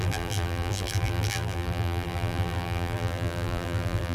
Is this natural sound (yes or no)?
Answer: no